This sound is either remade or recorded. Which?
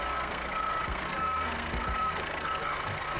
remade